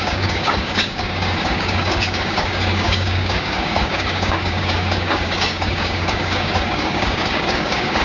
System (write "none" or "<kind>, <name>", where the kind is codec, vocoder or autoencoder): codec, DAC